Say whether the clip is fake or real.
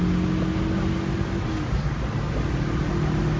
real